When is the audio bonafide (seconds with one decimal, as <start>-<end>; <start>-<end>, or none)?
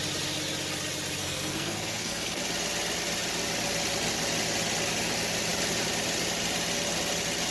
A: 0.0-1.2; 2.4-7.5